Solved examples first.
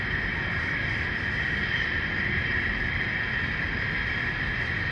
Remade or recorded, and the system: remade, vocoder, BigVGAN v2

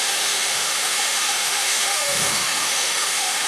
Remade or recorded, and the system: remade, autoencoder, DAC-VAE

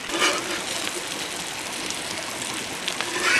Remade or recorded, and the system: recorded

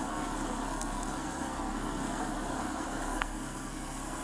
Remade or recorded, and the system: remade, codec, SNAC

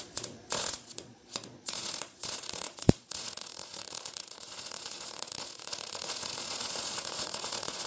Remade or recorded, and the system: remade, vocoder, Vocos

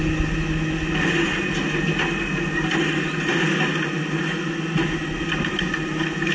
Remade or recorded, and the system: recorded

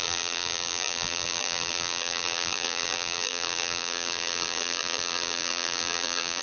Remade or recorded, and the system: remade, vocoder, BigVGAN v2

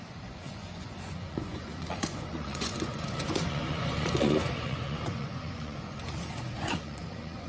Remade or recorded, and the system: remade, vocoder, Vocos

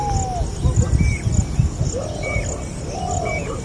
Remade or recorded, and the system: recorded